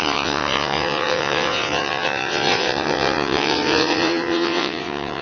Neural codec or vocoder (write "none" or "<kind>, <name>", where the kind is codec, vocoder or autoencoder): vocoder, WaveNeXt